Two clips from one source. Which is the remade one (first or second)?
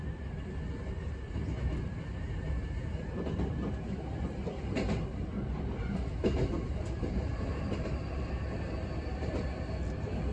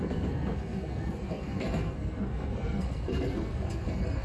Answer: second